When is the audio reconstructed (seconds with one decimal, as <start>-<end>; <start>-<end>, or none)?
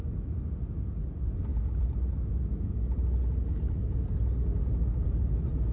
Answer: none